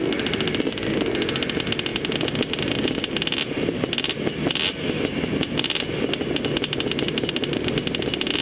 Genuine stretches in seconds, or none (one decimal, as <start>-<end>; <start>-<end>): 0.0-8.4